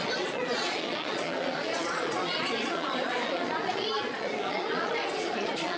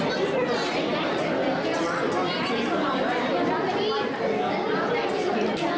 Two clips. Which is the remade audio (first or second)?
first